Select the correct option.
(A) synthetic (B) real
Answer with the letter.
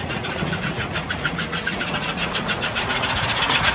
A